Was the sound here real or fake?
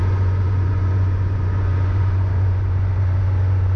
fake